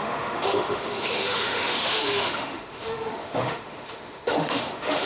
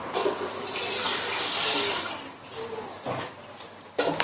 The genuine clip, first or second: second